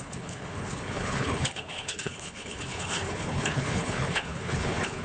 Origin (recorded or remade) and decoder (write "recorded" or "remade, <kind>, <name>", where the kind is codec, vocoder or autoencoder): remade, codec, HILCodec